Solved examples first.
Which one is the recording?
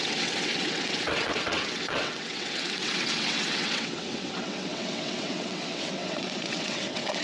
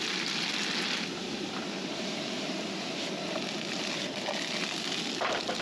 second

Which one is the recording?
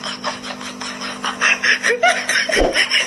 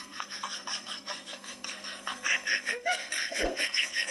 first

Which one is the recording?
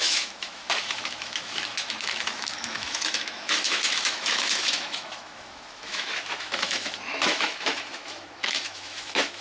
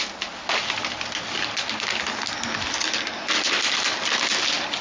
second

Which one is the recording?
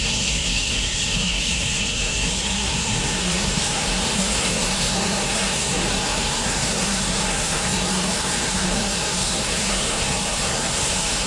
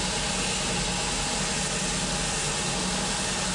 second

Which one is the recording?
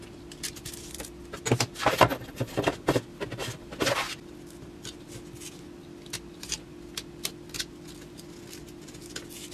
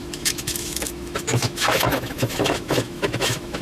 first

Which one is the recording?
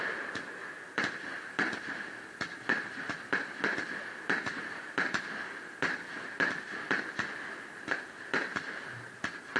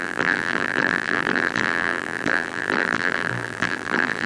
first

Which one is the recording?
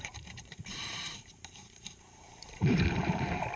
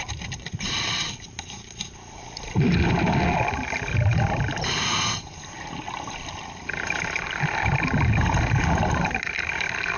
second